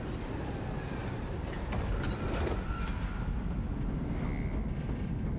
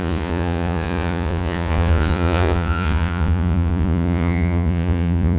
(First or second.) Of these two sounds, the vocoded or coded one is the second